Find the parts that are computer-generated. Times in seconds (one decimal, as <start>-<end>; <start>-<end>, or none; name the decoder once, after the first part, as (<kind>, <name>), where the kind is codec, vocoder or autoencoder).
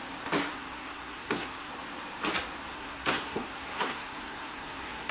0.5-1.7 (codec, SNAC); 2.7-5.1